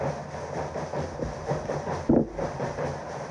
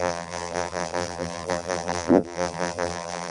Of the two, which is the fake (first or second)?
second